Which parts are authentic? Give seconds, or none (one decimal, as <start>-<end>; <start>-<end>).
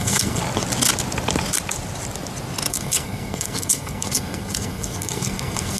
0.4-2.7